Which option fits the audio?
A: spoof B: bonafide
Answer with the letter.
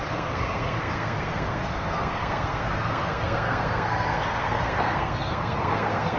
A